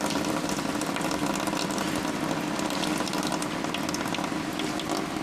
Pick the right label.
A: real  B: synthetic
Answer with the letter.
A